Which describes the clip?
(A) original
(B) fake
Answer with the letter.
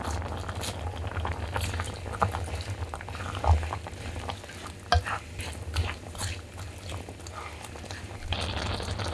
A